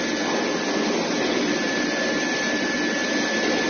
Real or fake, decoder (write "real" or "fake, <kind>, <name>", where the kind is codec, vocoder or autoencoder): real